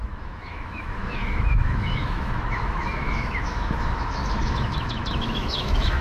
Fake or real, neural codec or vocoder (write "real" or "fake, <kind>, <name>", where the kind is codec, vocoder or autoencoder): fake, autoencoder, DAC-VAE